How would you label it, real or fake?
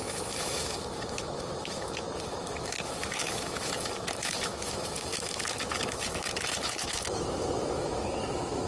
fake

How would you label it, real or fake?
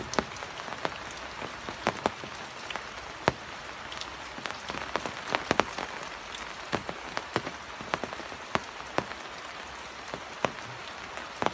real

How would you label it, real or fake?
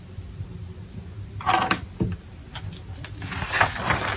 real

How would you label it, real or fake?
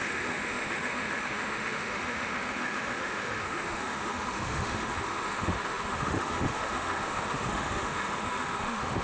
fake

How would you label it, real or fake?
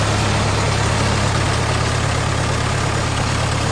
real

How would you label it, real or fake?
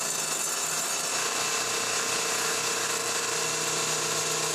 real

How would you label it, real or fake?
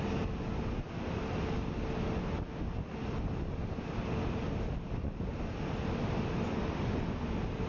real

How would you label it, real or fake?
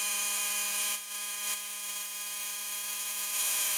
fake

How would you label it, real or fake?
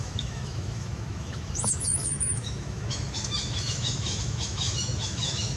fake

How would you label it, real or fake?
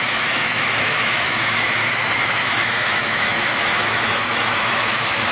fake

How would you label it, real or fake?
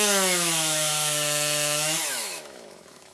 fake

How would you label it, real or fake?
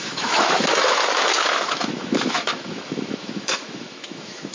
fake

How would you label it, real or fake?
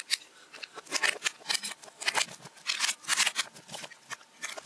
real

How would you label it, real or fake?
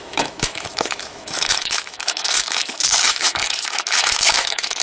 fake